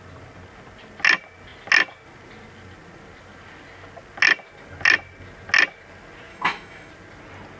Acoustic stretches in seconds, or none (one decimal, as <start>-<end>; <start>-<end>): 0.0-6.3; 6.9-7.6